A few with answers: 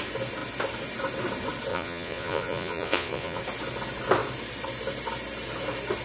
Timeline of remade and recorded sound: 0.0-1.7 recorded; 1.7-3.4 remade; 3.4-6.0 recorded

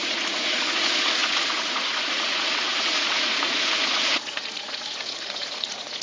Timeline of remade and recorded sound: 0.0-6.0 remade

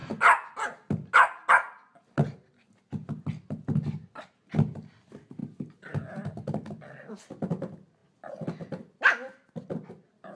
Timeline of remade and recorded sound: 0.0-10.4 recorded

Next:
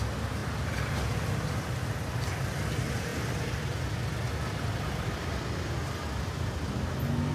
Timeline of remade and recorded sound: 0.0-7.3 recorded

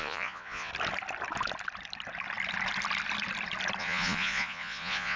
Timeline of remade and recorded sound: 0.0-0.7 remade; 0.7-3.8 recorded; 3.8-5.2 remade